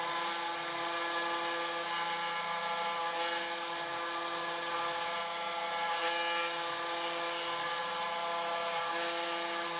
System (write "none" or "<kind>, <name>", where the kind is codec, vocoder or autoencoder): none